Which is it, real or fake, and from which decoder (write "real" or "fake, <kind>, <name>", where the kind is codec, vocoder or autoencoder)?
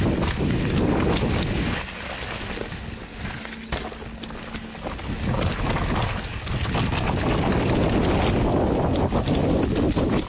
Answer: real